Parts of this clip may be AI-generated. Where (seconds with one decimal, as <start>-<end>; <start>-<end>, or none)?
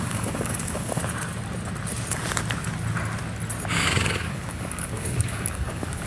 0.0-1.0; 3.7-6.1